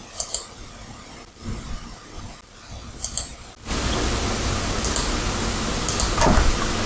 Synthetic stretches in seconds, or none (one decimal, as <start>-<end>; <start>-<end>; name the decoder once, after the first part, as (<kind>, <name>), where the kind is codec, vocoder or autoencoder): 0.0-2.2 (vocoder, BigVGAN v2)